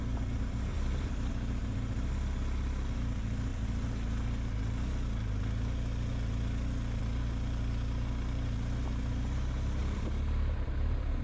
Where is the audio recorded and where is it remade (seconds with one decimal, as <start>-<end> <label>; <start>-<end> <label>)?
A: 0.0-0.7 recorded; 0.7-1.3 remade; 1.3-9.8 recorded; 9.8-11.2 remade